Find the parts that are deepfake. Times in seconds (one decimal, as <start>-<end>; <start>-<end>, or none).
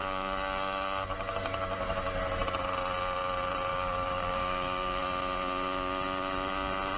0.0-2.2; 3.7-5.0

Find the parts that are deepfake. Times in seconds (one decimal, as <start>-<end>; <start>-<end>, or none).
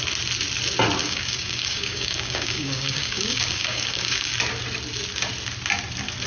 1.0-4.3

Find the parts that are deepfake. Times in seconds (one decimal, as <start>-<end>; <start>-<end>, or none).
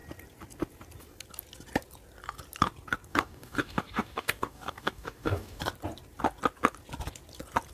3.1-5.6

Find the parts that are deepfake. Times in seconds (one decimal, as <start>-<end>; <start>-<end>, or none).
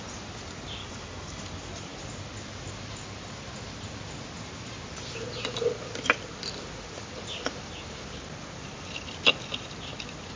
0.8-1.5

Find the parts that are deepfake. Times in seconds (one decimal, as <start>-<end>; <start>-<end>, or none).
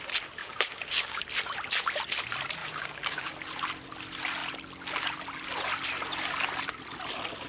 0.4-1.2; 2.6-3.3